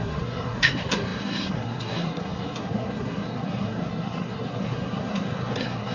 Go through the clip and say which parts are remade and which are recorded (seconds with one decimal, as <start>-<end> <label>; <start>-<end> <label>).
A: 0.0-5.9 remade